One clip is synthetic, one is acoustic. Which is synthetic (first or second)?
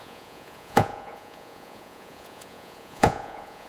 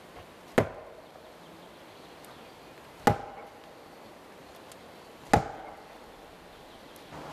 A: first